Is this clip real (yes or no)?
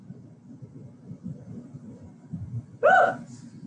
yes